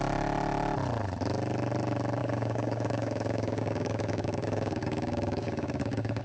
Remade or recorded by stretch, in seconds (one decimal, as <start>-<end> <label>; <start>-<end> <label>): 0.0-2.2 recorded; 2.2-6.2 remade